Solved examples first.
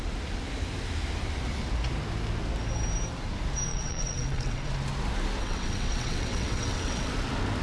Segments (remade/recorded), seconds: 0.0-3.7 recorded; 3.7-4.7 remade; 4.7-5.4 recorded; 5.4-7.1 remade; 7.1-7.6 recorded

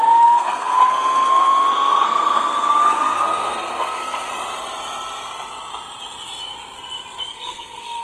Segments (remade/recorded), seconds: 0.0-4.3 remade; 4.3-7.3 recorded; 7.3-8.0 remade